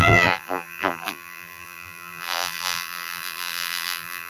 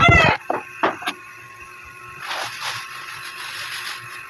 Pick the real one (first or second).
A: second